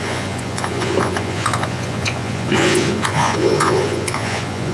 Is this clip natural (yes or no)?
no